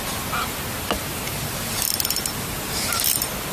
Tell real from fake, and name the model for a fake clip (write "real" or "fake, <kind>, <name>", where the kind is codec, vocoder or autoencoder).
real